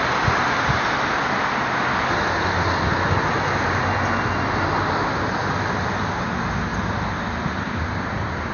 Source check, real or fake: real